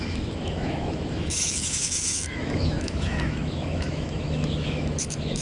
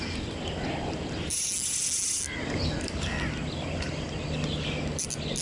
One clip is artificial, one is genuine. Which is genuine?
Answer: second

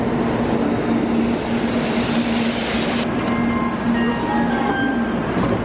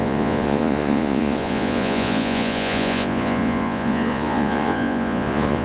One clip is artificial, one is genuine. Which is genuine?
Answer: first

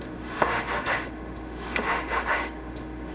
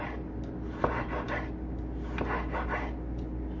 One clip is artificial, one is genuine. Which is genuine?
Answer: second